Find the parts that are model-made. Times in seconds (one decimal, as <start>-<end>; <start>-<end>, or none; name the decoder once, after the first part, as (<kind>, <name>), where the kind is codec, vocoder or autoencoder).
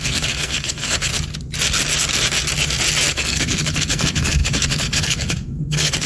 0.0-1.1 (codec, SNAC); 3.1-6.1